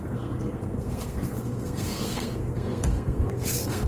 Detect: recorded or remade remade